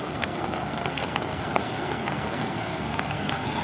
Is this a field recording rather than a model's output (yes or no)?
no